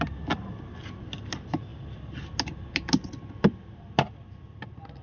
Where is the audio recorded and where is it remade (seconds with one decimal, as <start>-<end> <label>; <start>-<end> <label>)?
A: 0.0-5.0 recorded